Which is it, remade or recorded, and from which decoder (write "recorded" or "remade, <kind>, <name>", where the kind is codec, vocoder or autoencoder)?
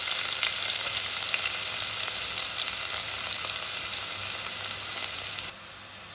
recorded